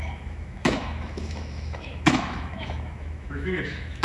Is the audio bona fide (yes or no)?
no